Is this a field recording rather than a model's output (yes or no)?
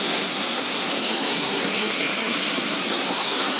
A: no